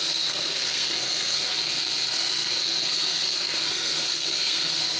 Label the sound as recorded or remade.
remade